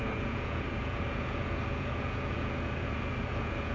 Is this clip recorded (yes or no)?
no